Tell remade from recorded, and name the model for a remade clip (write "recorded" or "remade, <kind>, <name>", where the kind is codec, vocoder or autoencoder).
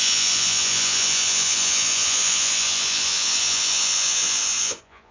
remade, vocoder, Vocos